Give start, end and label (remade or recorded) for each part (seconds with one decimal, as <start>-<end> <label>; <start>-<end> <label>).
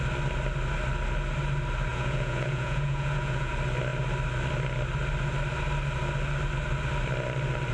0.0-1.9 recorded; 1.9-3.5 remade; 3.5-7.7 recorded